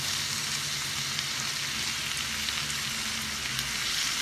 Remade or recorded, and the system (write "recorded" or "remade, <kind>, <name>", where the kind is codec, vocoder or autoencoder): recorded